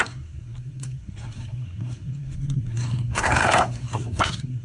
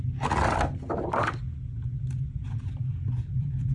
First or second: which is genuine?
second